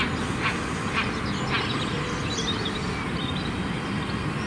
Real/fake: real